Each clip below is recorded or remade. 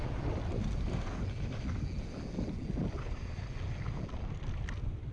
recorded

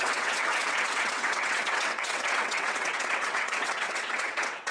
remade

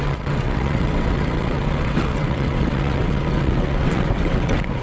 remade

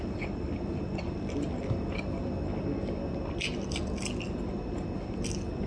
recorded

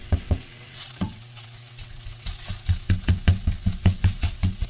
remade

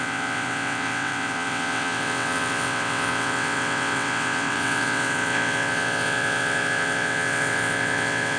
remade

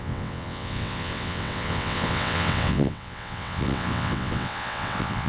remade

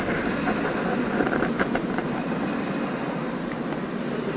recorded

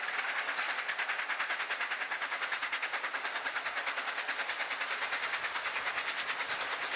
recorded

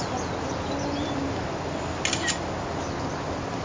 recorded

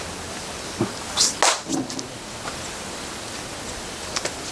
recorded